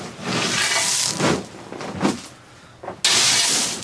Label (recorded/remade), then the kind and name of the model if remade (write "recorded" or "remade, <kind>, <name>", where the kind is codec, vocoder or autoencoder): recorded